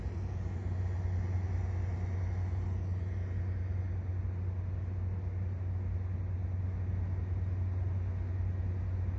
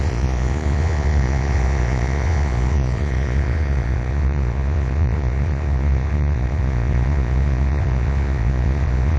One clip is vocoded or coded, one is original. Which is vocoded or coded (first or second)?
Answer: second